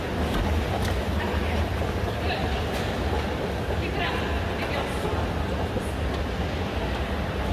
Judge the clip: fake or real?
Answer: real